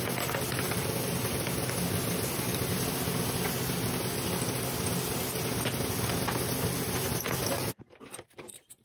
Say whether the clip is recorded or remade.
recorded